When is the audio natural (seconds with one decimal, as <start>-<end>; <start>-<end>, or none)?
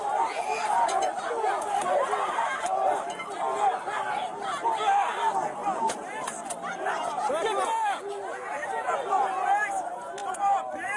0.0-10.2